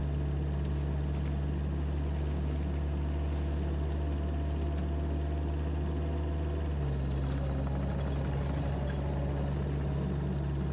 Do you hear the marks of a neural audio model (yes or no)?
no